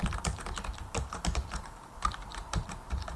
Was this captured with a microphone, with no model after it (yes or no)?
no